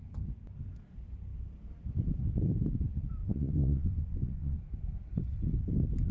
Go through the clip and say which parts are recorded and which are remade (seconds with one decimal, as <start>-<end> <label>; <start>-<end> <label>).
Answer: 0.0-3.2 recorded; 3.2-4.6 remade; 4.6-6.1 recorded